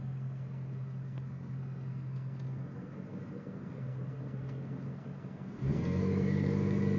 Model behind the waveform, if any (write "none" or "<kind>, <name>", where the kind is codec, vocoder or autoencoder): codec, SNAC